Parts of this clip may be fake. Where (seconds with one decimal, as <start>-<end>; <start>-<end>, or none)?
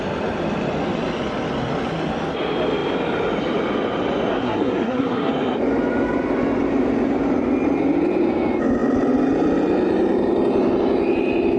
4.3-5.3